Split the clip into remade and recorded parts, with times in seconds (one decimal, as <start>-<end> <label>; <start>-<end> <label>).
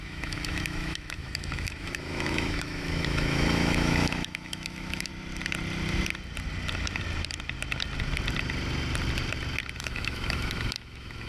0.0-5.1 remade; 5.1-9.8 recorded; 9.8-11.3 remade